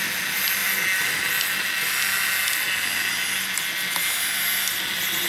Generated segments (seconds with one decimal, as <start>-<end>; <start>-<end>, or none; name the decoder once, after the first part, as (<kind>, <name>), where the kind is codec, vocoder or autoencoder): none